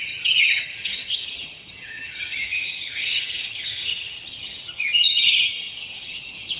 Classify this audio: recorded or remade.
remade